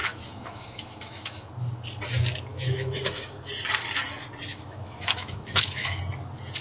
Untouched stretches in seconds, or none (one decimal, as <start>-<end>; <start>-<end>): 1.5-2.5; 3.5-4.5; 6.0-6.6